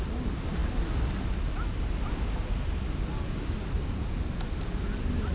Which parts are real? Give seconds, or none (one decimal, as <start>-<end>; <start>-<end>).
0.0-5.3